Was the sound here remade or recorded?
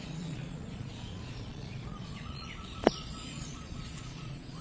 remade